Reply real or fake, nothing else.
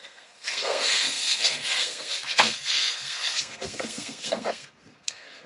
fake